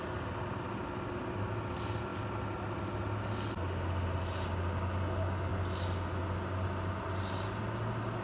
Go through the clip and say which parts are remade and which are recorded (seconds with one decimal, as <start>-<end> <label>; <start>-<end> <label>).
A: 0.0-8.2 recorded